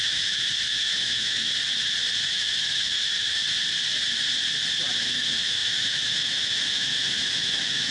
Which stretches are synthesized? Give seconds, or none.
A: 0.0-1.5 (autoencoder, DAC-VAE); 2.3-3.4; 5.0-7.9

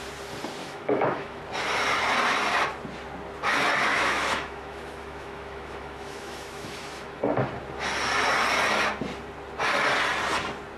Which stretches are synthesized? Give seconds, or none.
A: 0.6-1.4 (autoencoder, DAC-VAE); 3.9-7.2

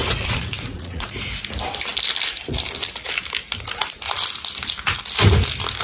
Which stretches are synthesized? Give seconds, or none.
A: 0.0-1.2 (vocoder, Vocos)

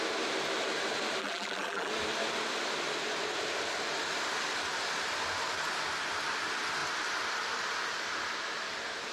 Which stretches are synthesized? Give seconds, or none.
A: 1.2-1.9 (vocoder, BigVGAN v2)

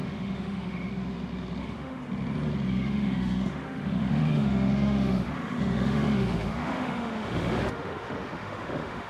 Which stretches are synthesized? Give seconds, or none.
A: 0.0-0.9 (autoencoder, DAC-VAE); 1.6-2.0; 2.7-9.1

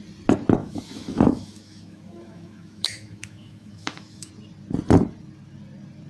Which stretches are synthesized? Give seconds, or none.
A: 0.6-4.3 (autoencoder, DAC-VAE)